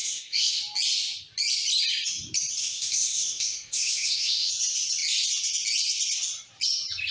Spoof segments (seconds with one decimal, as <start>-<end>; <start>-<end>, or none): 0.0-0.6; 2.6-4.5